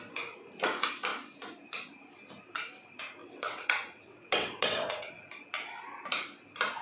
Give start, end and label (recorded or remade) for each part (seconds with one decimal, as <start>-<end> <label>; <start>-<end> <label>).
0.0-3.2 recorded; 3.2-5.1 remade; 5.1-6.8 recorded